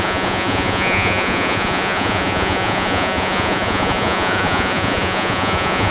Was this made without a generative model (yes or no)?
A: no